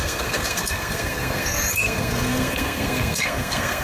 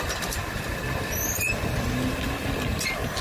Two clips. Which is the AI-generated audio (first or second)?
first